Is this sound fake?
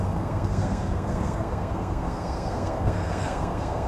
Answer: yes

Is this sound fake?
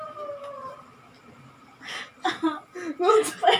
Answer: no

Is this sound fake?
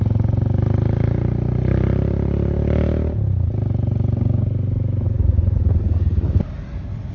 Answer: no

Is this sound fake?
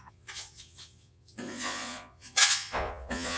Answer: yes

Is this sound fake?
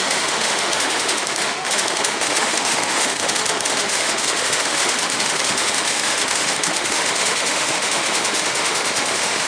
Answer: yes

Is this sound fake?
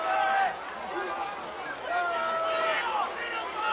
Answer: no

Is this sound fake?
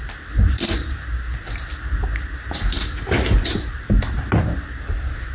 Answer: no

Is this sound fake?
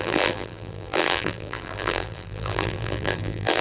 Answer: yes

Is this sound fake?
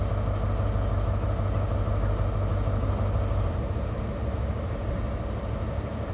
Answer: no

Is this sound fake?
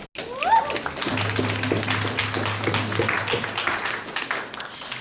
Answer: no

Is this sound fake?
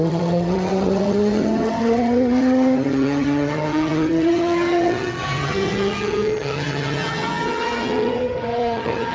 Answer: yes